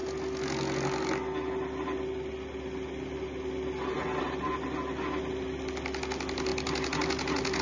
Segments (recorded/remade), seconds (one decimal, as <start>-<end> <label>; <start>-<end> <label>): 0.0-7.6 recorded